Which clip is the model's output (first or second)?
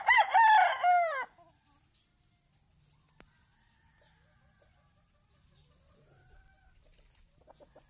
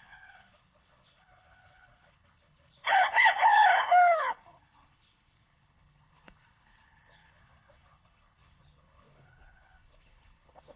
second